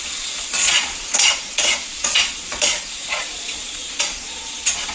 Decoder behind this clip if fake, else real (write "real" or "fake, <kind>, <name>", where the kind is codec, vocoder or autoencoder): fake, vocoder, Vocos